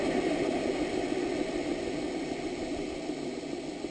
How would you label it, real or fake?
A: real